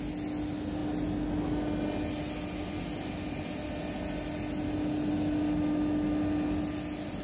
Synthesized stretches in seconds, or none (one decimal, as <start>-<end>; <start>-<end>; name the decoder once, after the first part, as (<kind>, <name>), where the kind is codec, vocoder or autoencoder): none